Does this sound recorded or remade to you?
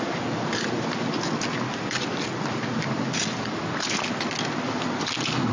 recorded